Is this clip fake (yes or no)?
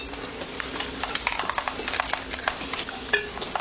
no